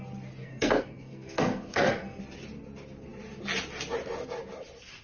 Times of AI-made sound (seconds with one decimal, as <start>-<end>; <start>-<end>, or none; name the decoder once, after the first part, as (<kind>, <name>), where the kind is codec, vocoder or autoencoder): 0.4-2.2 (codec, SNAC)